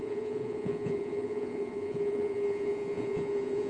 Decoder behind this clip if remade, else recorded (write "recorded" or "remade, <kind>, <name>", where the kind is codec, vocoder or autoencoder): remade, vocoder, Vocos